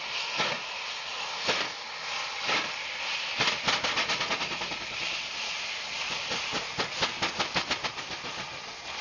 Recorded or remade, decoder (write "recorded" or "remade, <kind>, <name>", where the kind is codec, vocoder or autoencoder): recorded